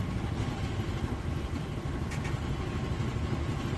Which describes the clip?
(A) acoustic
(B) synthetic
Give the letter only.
A